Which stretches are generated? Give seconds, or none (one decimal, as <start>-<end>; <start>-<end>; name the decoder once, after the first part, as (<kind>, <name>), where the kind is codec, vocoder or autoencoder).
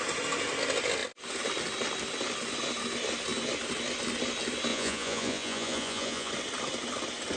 4.7-6.3 (vocoder, Vocos)